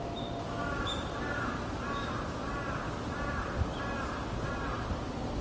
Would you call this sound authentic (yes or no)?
yes